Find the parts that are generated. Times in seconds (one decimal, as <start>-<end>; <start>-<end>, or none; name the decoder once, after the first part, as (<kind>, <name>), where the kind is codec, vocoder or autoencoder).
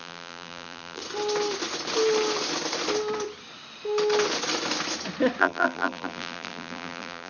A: 0.0-1.0 (vocoder, BigVGAN v2); 5.4-7.3